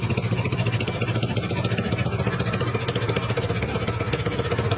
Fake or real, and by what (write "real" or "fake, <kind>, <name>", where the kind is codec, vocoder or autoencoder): real